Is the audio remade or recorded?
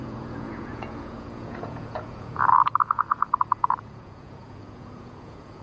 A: remade